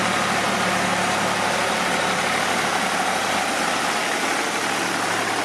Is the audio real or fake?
real